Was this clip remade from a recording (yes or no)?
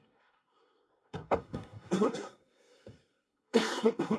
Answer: yes